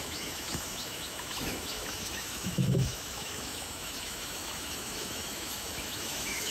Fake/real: fake